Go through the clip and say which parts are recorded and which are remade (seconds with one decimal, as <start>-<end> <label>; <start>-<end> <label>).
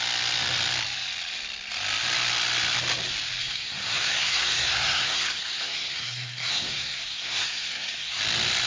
0.0-3.4 recorded; 3.4-8.2 remade; 8.2-8.7 recorded